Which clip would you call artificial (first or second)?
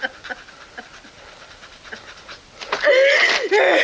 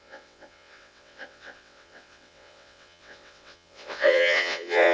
second